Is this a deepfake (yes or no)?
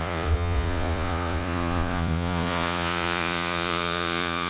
yes